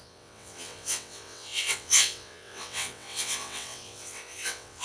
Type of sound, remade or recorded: remade